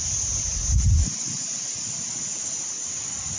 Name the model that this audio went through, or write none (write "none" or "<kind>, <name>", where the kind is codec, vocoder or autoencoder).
none